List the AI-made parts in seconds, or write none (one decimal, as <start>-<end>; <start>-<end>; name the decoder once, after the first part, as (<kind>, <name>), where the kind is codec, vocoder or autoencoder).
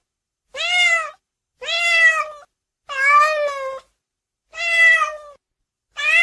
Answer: none